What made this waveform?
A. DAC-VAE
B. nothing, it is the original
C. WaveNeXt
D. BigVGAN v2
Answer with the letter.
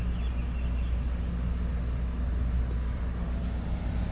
B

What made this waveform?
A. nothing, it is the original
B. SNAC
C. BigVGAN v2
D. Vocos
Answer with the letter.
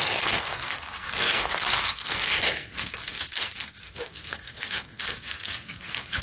B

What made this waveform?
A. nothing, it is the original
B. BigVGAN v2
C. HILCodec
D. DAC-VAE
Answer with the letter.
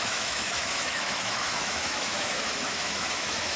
D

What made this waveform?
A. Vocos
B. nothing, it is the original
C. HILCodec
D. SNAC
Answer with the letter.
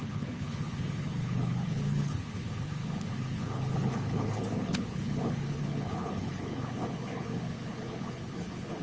C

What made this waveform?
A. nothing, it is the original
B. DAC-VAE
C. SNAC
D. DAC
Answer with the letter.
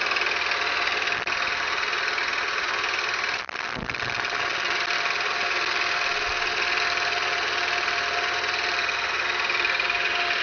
A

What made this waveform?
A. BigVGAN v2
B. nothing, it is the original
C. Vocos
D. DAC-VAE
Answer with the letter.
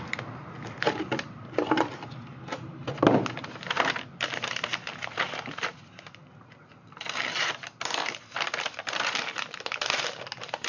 B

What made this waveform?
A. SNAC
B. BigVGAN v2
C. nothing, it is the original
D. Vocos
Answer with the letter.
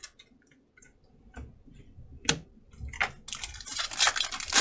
C